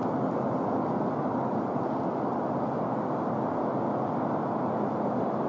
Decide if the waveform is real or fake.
real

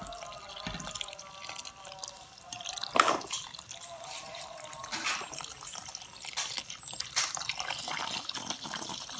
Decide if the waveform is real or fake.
real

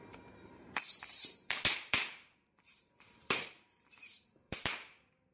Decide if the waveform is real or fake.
fake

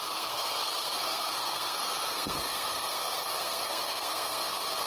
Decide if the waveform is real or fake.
fake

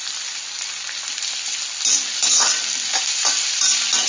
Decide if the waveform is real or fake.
real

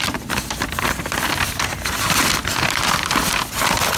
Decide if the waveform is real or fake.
fake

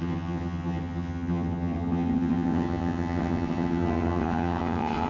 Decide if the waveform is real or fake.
fake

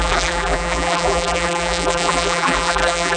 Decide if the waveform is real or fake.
fake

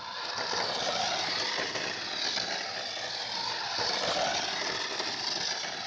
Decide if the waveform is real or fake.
real